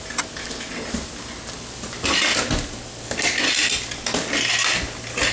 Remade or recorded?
recorded